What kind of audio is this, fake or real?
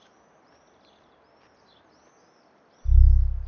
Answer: real